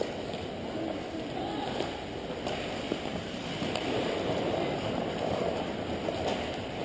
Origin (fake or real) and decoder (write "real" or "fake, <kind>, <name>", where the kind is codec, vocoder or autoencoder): real